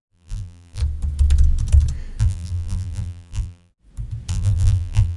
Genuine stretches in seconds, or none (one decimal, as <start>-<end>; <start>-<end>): 0.8-2.2; 3.7-4.3